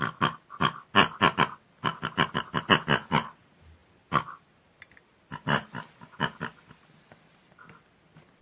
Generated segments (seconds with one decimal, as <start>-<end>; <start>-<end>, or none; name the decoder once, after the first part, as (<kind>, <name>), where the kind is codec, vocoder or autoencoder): none